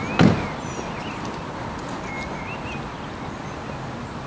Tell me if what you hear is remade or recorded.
recorded